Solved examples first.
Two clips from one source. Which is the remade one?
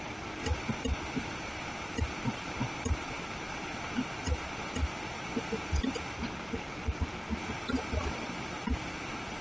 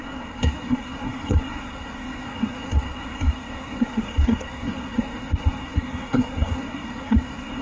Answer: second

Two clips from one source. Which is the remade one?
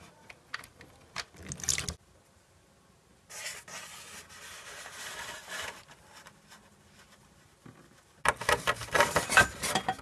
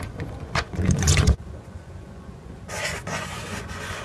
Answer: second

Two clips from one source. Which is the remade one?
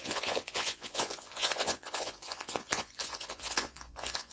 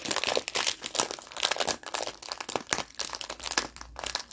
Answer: first